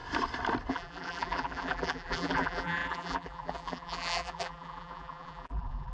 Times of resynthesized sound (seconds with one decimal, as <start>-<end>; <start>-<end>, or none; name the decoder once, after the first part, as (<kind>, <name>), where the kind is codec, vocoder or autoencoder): 0.7-5.9 (vocoder, BigVGAN v2)